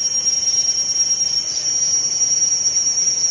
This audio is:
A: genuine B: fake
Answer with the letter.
A